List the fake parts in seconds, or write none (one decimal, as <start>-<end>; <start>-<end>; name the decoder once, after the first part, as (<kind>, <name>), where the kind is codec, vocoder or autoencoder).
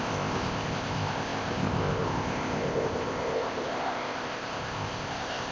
0.0-5.5 (codec, ZipCodec)